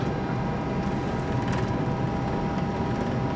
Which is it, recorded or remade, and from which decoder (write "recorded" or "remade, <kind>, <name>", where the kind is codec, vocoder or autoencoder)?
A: recorded